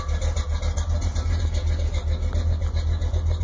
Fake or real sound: real